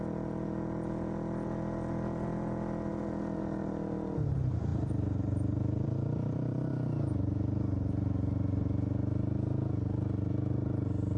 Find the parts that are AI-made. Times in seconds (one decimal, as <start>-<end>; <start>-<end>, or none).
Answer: 4.7-6.7